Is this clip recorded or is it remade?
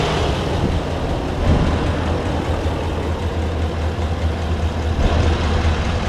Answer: recorded